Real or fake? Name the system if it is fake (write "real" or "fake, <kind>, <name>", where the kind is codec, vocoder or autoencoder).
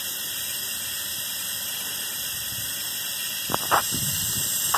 fake, vocoder, BigVGAN v2